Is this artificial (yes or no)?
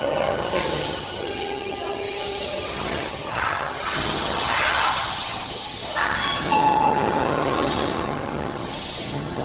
yes